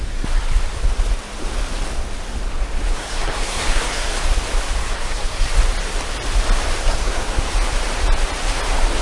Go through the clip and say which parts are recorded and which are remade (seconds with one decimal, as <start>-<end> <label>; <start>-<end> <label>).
0.0-2.9 recorded; 2.9-4.1 remade; 4.1-4.8 recorded; 4.8-5.5 remade; 5.5-6.8 recorded; 6.8-7.5 remade; 7.5-9.0 recorded